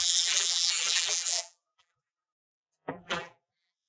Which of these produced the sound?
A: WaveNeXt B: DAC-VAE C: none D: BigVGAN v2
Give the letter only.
D